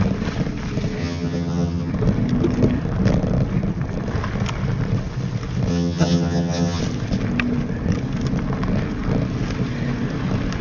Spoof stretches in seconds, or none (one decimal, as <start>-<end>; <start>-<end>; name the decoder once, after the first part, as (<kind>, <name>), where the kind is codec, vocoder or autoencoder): 1.0-1.9 (vocoder, HiFi-GAN); 5.7-6.8